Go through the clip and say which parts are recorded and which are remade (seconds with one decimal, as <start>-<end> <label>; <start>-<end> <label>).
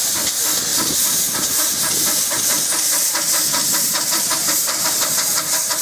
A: 0.0-0.7 recorded; 0.7-2.4 remade; 2.4-3.6 recorded; 3.6-5.0 remade; 5.0-5.8 recorded